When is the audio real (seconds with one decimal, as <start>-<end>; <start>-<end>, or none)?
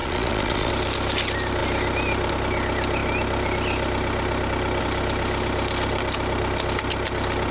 0.7-7.5